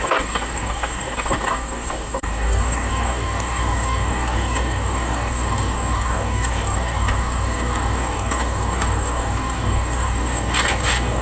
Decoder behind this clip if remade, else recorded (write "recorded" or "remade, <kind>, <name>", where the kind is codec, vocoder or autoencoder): remade, codec, DAC